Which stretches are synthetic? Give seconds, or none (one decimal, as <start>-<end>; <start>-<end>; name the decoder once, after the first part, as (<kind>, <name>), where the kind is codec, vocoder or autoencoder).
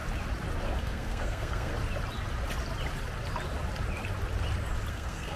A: 0.8-1.7 (codec, SNAC); 4.9-5.4